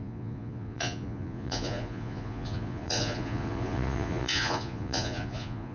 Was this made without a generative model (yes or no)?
no